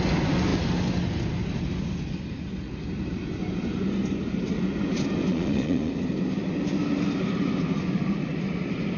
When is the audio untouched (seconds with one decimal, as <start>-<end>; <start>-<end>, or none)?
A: 0.0-5.3; 5.9-9.0